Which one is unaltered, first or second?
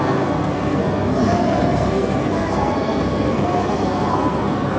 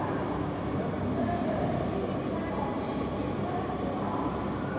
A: second